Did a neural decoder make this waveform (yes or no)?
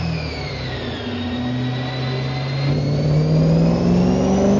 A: no